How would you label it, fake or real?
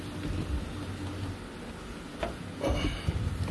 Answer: real